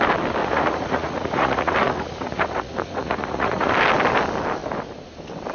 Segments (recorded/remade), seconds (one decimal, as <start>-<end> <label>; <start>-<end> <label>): 0.0-0.4 recorded; 0.4-3.7 remade; 3.7-5.5 recorded